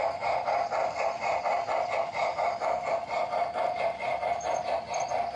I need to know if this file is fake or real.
real